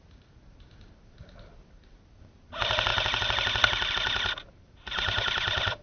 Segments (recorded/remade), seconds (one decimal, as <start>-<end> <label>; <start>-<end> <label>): 0.0-4.4 recorded; 4.4-5.8 remade